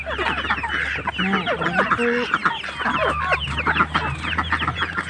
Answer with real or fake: real